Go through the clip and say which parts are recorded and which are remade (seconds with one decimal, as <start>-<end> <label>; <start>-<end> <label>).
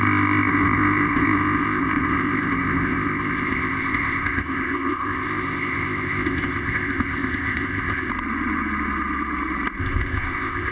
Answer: 0.0-8.1 remade; 8.1-9.8 recorded; 9.8-10.7 remade